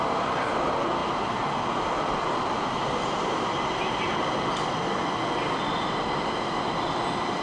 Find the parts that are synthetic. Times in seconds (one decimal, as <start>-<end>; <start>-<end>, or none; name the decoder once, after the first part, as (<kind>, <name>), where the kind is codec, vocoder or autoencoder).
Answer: none